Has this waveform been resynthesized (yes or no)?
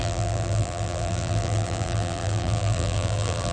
yes